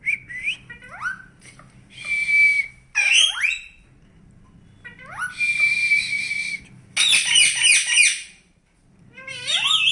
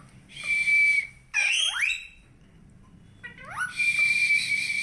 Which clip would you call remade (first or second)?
second